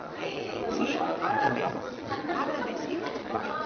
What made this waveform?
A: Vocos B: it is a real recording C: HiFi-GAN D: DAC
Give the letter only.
A